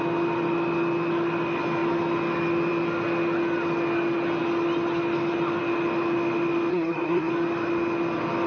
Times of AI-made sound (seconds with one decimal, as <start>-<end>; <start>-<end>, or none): 6.7-7.3